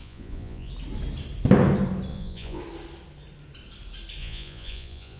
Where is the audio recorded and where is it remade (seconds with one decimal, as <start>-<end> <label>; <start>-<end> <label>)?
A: 0.0-0.7 remade; 0.7-2.1 recorded; 2.1-2.6 remade; 2.6-4.2 recorded; 4.2-5.2 remade